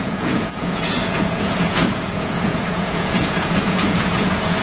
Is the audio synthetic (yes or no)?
yes